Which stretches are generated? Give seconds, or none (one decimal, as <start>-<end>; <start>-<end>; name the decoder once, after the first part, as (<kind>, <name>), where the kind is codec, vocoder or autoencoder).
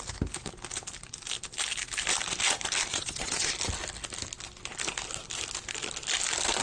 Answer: 2.9-3.5 (vocoder, Vocos)